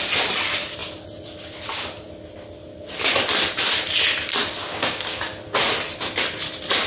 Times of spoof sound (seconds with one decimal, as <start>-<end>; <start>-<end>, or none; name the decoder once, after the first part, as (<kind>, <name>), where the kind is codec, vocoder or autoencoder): 4.6-5.2 (codec, DAC)